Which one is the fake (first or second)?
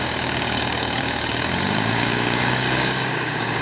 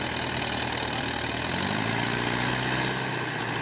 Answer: first